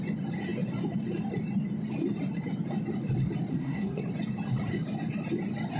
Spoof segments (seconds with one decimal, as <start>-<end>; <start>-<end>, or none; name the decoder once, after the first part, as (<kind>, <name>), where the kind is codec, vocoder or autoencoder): 3.5-4.0 (codec, SNAC)